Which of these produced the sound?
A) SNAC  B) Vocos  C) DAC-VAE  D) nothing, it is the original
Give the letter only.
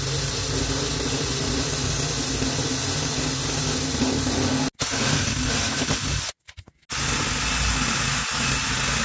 D